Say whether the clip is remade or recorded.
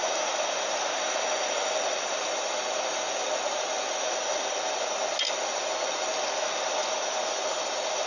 recorded